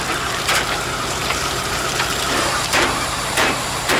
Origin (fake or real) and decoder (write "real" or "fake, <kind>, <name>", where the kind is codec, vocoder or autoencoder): fake, vocoder, BigVGAN v2